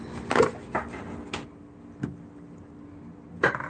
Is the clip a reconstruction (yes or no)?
no